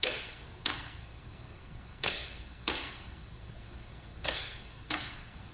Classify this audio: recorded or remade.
remade